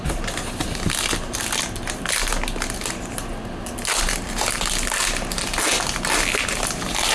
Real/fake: real